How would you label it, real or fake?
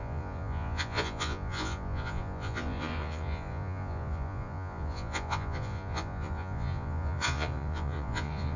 fake